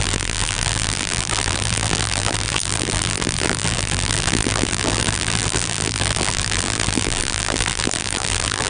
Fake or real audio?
fake